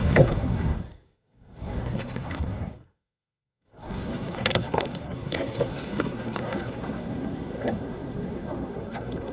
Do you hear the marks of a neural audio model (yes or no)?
yes